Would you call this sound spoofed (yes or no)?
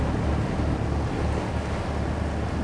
no